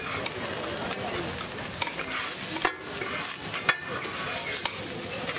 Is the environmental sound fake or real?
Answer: real